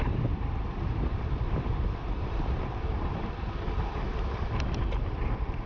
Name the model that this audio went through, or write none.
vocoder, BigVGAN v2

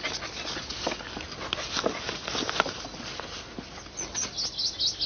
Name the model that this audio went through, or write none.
none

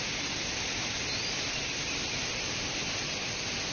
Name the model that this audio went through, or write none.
vocoder, BigVGAN v2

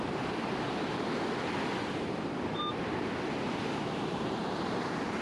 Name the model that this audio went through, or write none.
vocoder, BigVGAN v2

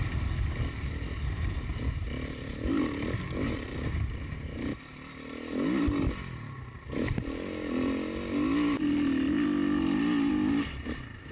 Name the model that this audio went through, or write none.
none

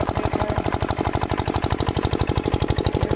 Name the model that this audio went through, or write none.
vocoder, BigVGAN v2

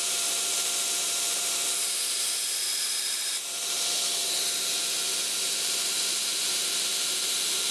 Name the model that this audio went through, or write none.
vocoder, BigVGAN v2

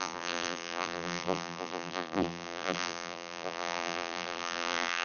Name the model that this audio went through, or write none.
vocoder, BigVGAN v2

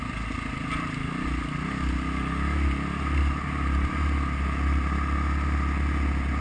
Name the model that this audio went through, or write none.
none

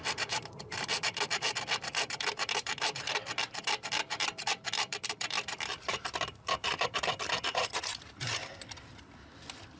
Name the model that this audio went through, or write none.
vocoder, BigVGAN v2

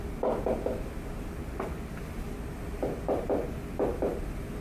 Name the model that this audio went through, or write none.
none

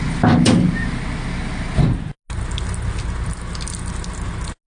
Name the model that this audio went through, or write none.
none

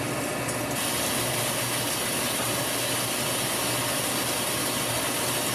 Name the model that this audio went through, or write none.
none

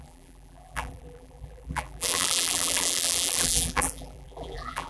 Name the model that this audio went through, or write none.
vocoder, BigVGAN v2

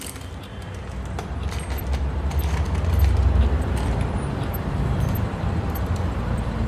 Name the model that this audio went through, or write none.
vocoder, BigVGAN v2